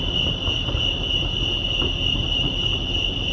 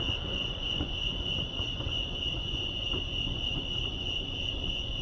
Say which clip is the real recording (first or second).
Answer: first